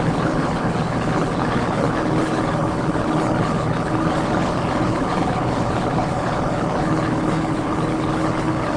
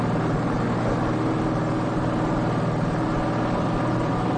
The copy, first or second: first